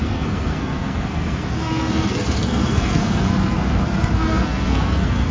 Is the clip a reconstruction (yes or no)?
yes